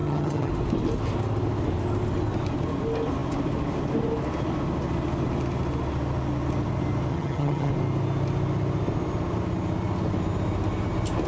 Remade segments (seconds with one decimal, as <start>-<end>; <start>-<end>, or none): 0.0-0.5; 7.1-7.7